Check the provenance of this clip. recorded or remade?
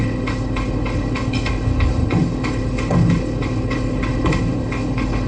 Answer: remade